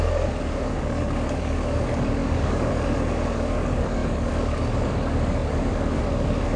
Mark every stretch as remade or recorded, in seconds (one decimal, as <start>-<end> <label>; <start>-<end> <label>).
0.0-6.6 remade